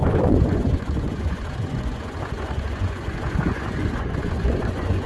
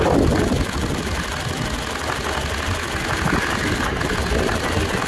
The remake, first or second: first